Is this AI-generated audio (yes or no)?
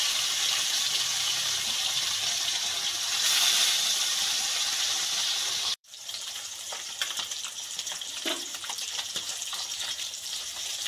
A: yes